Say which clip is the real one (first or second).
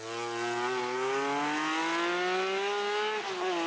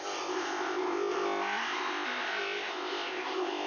first